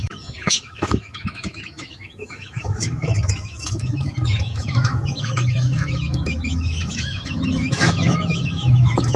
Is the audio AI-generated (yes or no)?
yes